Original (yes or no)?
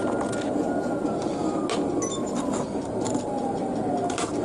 yes